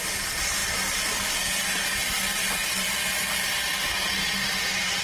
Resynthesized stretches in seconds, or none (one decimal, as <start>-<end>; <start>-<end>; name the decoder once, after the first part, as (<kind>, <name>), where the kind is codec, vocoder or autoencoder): none